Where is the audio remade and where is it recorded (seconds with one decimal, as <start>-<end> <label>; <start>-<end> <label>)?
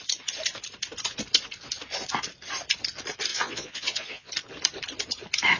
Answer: 0.0-3.3 recorded; 3.3-4.3 remade; 4.3-5.6 recorded